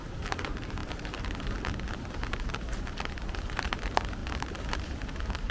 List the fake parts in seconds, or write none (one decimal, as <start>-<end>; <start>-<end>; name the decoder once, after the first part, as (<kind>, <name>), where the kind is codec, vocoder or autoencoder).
0.0-5.5 (vocoder, BigVGAN v2)